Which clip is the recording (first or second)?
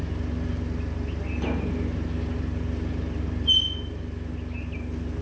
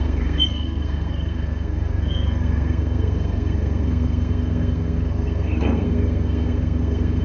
first